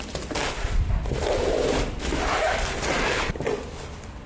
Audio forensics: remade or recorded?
remade